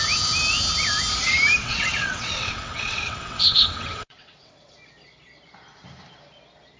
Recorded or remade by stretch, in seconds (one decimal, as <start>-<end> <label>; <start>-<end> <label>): 0.0-1.6 recorded; 1.6-4.6 remade; 4.6-6.8 recorded